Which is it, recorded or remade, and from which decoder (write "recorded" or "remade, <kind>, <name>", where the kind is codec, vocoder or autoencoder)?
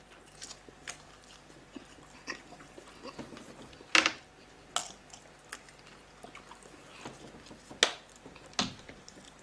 recorded